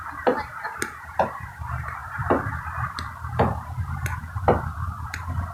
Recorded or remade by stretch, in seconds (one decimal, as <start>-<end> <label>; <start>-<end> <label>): 0.0-5.5 recorded